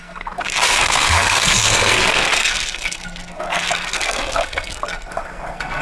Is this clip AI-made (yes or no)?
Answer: yes